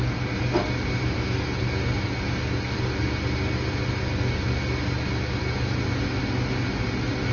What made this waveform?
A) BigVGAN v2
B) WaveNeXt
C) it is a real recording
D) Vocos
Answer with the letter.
C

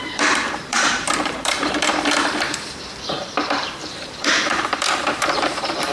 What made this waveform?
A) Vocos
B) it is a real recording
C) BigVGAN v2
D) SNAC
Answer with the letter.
C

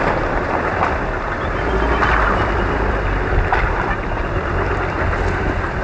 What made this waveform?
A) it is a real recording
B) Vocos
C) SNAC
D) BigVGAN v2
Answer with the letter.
D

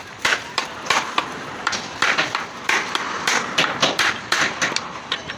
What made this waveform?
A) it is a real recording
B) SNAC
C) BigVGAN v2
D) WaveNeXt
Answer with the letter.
C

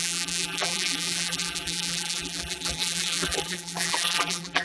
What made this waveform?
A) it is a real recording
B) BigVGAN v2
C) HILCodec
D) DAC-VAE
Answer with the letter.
B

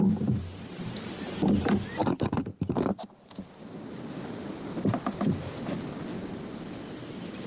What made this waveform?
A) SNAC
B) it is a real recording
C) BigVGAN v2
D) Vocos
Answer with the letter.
C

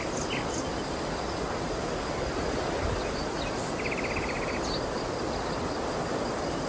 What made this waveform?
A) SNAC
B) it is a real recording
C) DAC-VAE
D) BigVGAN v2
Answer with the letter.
B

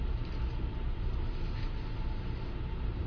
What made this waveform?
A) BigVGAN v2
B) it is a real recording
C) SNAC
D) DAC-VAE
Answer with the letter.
A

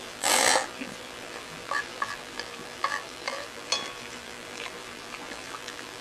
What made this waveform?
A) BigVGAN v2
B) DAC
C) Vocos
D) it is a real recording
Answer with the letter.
A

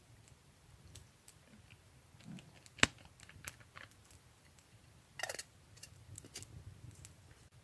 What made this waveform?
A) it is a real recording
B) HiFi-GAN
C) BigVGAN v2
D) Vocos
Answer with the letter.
A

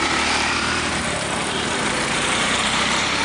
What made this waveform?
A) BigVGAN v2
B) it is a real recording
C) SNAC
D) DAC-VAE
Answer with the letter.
A